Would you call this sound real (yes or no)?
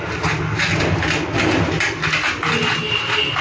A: yes